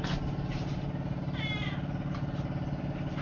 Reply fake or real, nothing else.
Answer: real